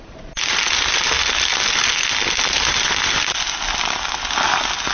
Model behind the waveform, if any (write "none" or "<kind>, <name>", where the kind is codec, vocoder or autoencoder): none